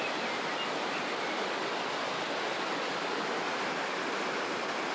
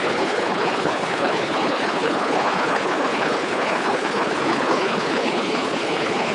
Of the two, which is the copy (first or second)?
second